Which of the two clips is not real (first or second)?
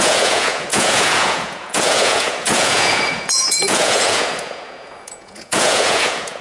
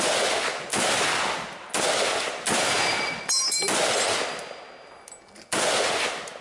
first